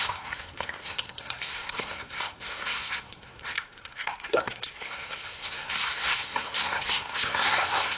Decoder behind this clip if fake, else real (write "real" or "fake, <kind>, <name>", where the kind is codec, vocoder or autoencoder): fake, codec, SNAC